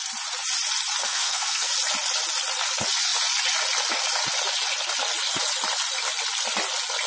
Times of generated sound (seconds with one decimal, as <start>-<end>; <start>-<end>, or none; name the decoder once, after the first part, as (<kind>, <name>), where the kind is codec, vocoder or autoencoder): 1.0-1.7 (codec, SNAC)